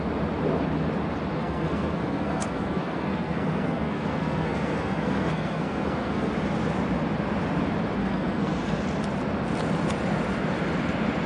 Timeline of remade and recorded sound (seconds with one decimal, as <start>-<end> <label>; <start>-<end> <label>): 0.0-1.3 recorded; 1.3-6.3 remade; 6.3-8.0 recorded; 8.0-8.8 remade; 8.8-11.3 recorded